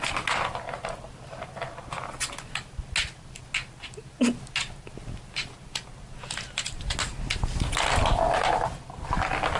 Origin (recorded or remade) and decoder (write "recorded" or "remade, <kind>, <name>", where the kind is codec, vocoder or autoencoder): recorded